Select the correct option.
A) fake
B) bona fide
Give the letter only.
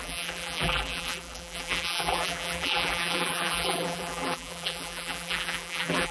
A